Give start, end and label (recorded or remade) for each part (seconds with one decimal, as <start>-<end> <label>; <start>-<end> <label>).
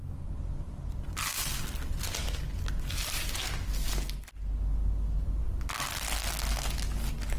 0.0-7.4 recorded